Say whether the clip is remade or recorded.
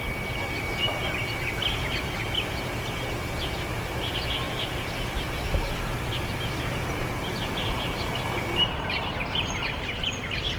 recorded